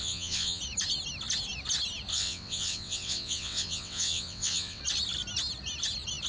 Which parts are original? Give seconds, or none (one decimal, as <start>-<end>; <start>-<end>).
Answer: 0.6-2.1; 4.8-6.3

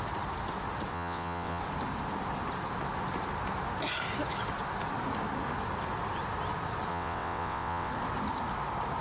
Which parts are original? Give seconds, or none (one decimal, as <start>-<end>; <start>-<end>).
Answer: 0.0-0.9; 1.6-6.9; 7.9-9.0

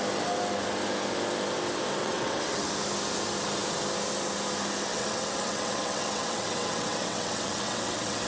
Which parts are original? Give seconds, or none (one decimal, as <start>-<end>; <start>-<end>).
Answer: 0.0-2.0; 2.6-4.9

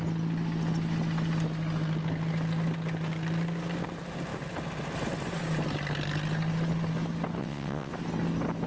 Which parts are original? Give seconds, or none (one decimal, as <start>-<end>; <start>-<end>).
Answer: 0.0-7.4; 7.9-8.7

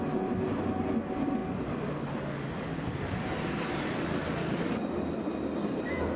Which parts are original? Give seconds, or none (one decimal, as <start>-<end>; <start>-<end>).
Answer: 0.0-6.2

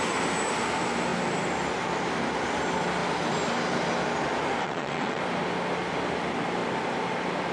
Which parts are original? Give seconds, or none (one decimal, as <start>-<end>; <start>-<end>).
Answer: 0.0-4.6; 5.2-7.5

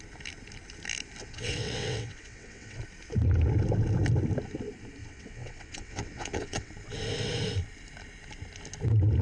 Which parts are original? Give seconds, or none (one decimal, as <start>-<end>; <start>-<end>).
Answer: 0.0-1.2; 2.8-5.0; 6.7-9.2